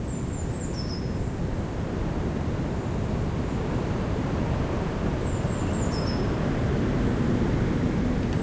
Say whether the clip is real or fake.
real